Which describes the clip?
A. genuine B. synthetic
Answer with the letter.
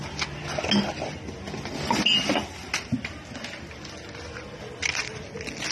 A